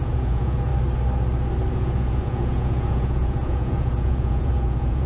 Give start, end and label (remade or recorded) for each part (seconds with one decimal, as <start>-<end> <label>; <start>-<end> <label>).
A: 0.0-0.7 remade; 0.7-1.7 recorded; 1.7-5.1 remade